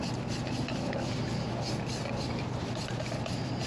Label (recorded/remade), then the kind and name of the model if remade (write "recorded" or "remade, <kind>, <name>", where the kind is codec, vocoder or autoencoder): recorded